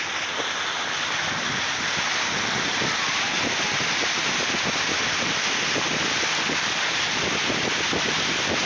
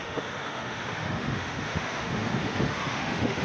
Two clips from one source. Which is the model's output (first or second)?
second